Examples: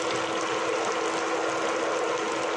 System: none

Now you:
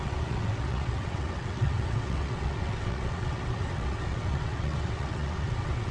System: vocoder, WaveNeXt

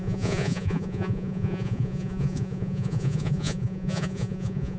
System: vocoder, Vocos